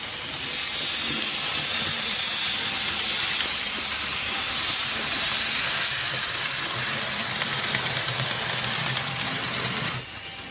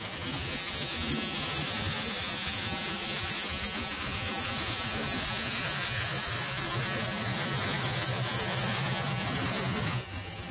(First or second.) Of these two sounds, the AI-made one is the second